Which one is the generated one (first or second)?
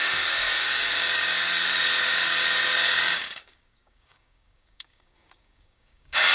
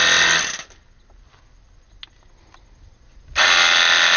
first